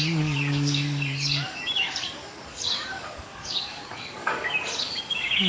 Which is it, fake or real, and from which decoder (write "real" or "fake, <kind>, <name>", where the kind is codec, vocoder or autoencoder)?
fake, codec, DAC